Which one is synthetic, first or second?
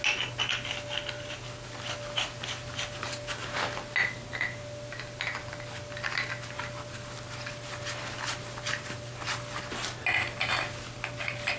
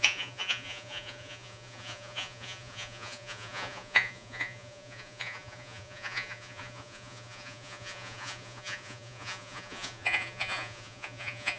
second